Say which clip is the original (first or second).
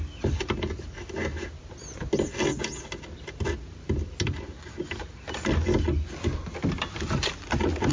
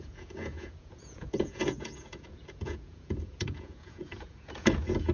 first